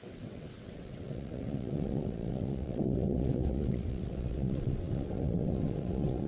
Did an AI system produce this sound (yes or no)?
yes